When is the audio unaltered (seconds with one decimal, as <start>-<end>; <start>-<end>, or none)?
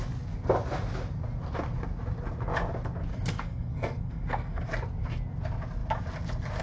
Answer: 0.0-3.1; 4.7-6.6